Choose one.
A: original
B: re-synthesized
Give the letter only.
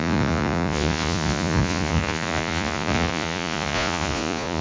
B